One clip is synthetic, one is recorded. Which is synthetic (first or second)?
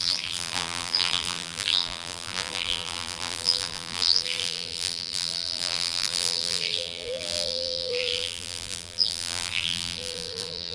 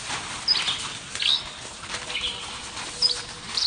first